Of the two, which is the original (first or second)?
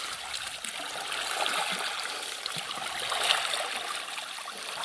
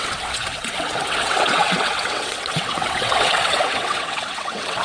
first